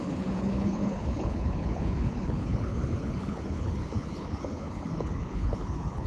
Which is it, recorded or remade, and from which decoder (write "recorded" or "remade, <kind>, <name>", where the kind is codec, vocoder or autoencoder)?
remade, codec, HILCodec